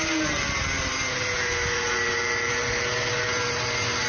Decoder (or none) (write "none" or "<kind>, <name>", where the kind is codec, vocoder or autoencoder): none